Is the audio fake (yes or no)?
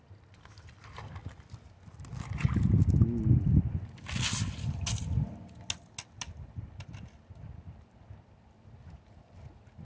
no